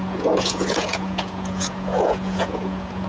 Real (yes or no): no